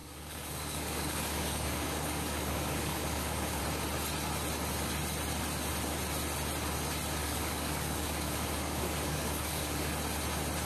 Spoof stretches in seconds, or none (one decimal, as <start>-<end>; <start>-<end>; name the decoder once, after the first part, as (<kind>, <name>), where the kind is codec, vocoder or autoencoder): 0.0-3.6 (codec, DAC); 7.2-9.9